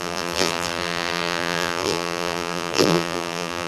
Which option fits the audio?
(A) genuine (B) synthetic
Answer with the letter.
B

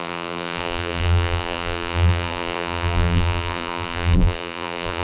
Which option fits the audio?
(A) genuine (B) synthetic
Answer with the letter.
B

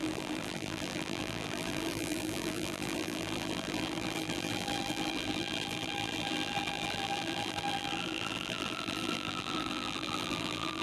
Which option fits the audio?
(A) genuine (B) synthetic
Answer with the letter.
B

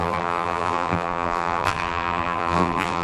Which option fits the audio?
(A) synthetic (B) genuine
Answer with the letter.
A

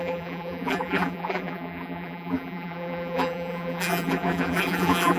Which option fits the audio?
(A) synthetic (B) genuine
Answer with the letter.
A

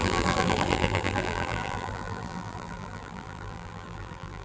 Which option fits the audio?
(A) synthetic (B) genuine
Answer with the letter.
A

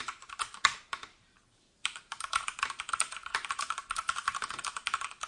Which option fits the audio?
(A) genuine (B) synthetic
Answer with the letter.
B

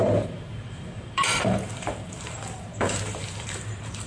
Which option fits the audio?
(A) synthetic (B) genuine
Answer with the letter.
A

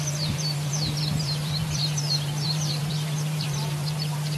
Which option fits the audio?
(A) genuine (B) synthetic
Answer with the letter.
B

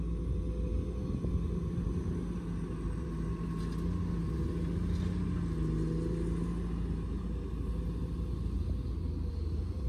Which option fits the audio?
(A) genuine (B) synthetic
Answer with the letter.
A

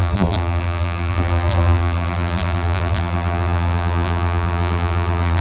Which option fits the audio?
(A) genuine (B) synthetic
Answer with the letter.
B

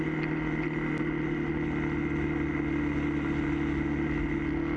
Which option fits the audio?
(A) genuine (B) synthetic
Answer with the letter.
A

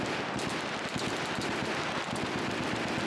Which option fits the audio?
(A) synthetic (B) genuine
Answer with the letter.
B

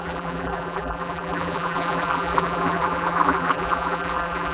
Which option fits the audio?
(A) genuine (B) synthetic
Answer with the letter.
B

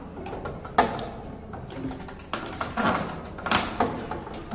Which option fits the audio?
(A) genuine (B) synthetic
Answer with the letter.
A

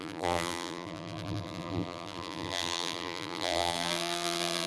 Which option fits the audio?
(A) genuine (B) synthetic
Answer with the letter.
B